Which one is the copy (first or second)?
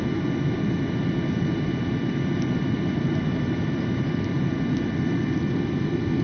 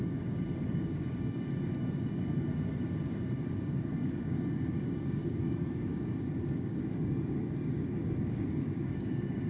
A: second